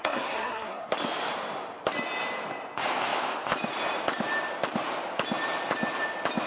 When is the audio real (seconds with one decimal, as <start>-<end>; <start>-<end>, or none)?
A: 0.9-6.5